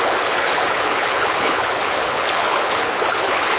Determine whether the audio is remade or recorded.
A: remade